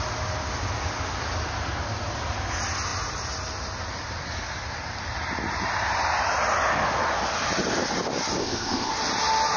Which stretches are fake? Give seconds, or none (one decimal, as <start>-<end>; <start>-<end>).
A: 8.4-8.9